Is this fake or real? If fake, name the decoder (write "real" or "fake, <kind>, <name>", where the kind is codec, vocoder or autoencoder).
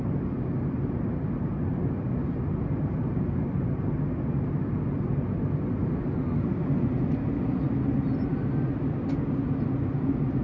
real